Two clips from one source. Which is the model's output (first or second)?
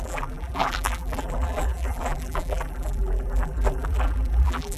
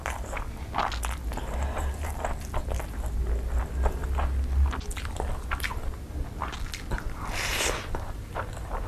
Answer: first